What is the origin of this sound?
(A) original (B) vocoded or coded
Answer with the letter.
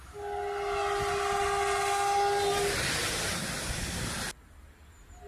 A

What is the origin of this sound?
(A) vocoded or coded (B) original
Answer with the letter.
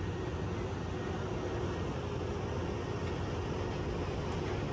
B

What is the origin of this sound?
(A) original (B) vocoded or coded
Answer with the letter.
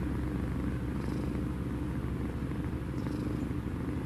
A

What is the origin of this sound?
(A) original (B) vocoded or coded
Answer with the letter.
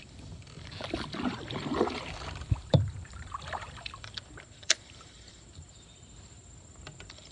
B